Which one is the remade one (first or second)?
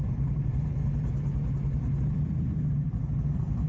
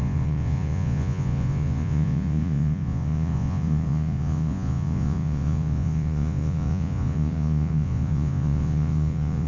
second